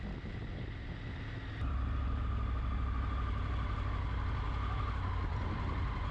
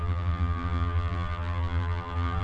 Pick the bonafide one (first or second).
first